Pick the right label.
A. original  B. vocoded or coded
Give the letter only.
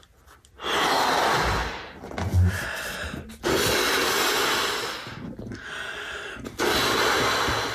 A